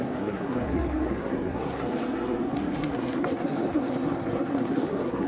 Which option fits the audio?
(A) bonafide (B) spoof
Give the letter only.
B